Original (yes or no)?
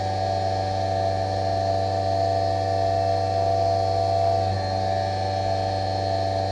yes